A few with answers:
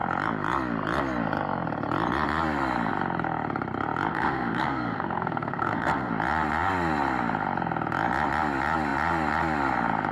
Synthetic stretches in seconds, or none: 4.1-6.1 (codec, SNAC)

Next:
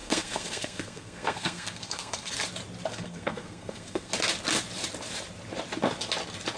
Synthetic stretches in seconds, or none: 0.0-2.3 (codec, SNAC); 2.9-4.1

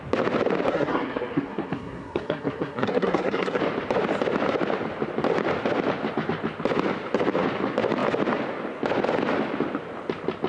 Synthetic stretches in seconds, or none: 0.7-3.6 (codec, SNAC)

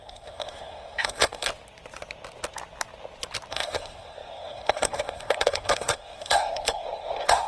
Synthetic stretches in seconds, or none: 0.0-1.5 (codec, SNAC); 3.5-7.5

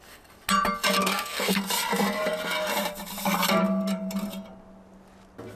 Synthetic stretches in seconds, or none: 1.0-1.6 (codec, SNAC)

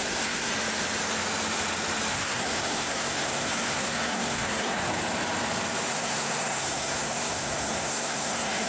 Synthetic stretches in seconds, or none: 0.0-0.5 (codec, SNAC); 2.1-4.9; 5.9-8.7

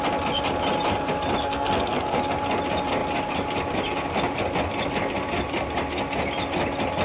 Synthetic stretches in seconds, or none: 1.4-2.2 (codec, SNAC)

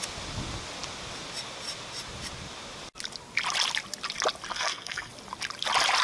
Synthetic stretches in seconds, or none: 4.5-5.1 (codec, SNAC)